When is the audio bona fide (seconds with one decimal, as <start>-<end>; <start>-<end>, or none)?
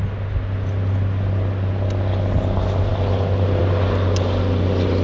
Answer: 0.0-5.0